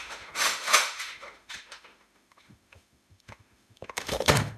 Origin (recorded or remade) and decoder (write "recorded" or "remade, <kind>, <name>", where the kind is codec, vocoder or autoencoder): remade, autoencoder, DAC-VAE